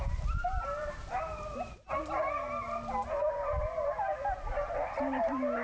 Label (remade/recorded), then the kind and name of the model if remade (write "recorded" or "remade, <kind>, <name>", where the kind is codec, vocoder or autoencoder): recorded